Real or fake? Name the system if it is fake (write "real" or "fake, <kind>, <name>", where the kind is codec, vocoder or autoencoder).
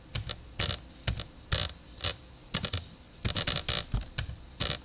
real